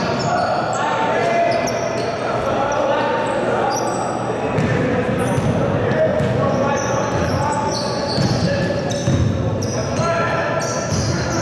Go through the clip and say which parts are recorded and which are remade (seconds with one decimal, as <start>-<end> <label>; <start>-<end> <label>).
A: 0.0-6.1 recorded; 6.1-8.5 remade; 8.5-11.4 recorded